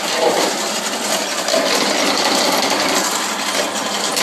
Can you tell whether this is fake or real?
fake